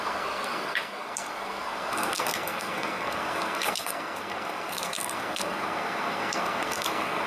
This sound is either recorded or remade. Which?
remade